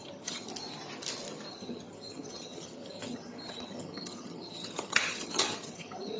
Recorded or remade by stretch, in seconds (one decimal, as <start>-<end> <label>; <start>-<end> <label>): 0.0-0.5 remade; 0.5-1.5 recorded; 1.5-6.2 remade